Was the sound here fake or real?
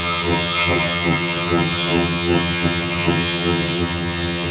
fake